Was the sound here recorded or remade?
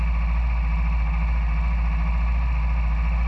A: recorded